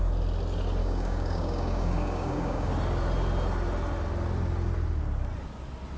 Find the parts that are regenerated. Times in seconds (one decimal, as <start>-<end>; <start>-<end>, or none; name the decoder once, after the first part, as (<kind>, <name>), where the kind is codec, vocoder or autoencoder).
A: 0.8-2.7 (codec, DAC)